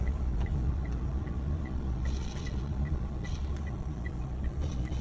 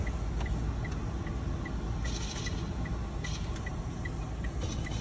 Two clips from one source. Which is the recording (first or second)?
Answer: second